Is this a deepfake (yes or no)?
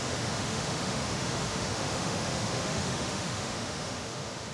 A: yes